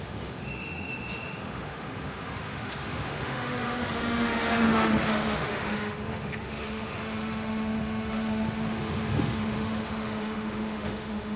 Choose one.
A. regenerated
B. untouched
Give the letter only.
A